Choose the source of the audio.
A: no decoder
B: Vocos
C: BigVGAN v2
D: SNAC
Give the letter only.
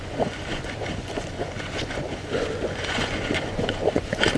B